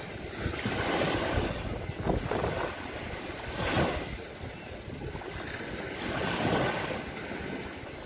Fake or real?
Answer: real